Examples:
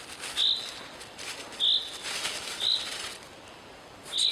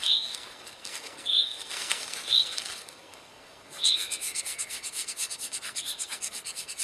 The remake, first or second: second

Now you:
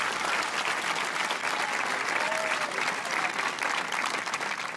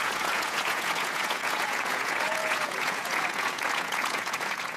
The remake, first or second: second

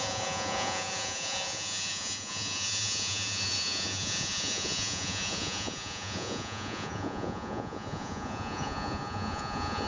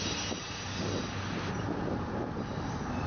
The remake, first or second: first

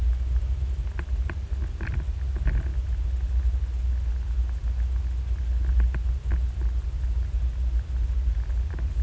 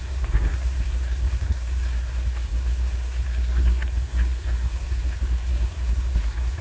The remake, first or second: second